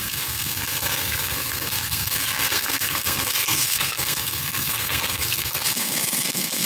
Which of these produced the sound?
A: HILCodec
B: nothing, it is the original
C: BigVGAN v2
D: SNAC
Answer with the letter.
D